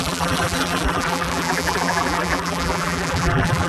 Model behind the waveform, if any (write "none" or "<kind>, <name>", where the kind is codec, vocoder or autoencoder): vocoder, BigVGAN v2